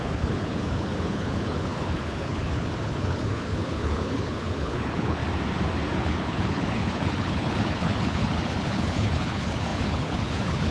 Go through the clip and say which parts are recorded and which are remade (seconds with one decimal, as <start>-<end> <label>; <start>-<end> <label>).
0.0-5.2 remade; 5.2-5.9 recorded; 5.9-10.7 remade

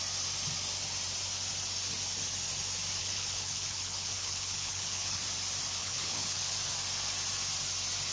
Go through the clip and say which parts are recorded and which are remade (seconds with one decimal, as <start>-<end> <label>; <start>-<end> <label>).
0.0-3.0 recorded; 3.0-5.2 remade; 5.2-5.8 recorded; 5.8-6.6 remade; 6.6-8.1 recorded

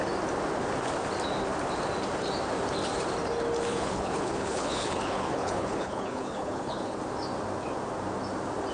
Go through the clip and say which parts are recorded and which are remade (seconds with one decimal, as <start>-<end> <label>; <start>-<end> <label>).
0.0-3.7 recorded; 3.7-7.0 remade; 7.0-8.7 recorded

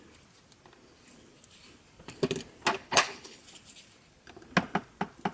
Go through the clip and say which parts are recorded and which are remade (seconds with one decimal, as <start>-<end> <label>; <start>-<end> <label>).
0.0-2.8 recorded; 2.8-3.4 remade; 3.4-5.3 recorded

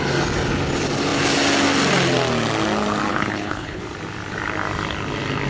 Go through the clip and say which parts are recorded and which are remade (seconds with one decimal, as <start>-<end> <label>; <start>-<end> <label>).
0.0-3.1 recorded; 3.1-3.8 remade; 3.8-5.5 recorded

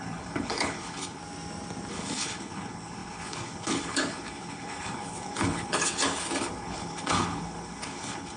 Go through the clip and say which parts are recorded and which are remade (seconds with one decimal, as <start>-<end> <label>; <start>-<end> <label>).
0.0-1.2 remade; 1.2-1.9 recorded; 1.9-8.4 remade

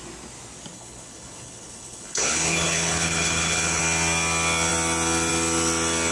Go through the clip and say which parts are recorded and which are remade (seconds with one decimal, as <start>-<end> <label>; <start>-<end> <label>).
0.0-0.7 recorded; 0.7-3.8 remade; 3.8-6.1 recorded